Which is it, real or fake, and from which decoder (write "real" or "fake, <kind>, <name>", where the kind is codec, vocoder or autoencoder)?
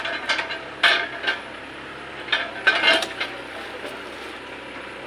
real